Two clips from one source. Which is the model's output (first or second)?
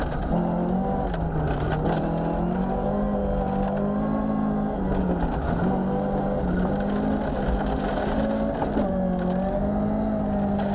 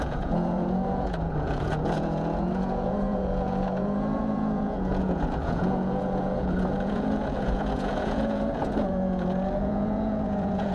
second